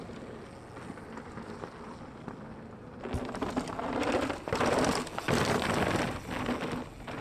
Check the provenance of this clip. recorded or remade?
recorded